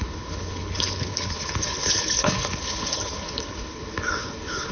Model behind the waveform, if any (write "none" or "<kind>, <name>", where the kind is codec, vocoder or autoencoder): codec, HILCodec